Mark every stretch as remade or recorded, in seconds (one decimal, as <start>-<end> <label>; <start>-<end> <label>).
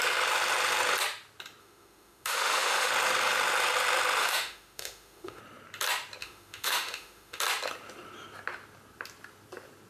0.0-1.6 recorded; 1.6-2.9 remade; 2.9-4.2 recorded; 4.2-5.4 remade; 5.4-6.2 recorded; 6.2-7.4 remade; 7.4-9.9 recorded